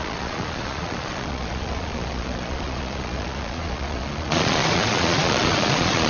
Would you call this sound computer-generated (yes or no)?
yes